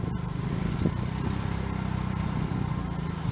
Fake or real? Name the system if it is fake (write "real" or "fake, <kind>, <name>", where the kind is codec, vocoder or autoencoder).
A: real